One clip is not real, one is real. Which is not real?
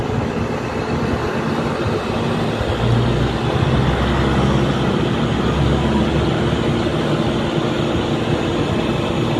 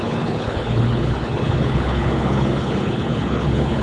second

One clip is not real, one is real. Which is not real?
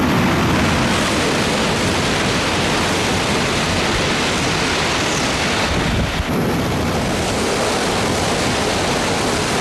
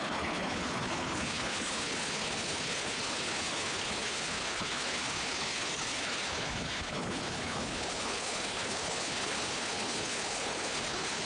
second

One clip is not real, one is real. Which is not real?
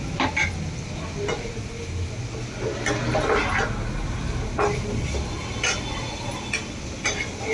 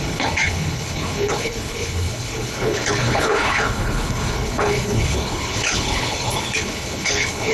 second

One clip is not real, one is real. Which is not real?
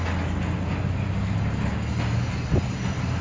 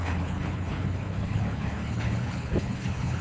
second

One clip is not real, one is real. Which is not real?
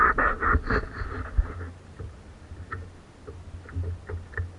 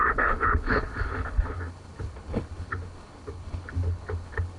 second